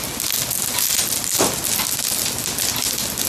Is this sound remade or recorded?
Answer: recorded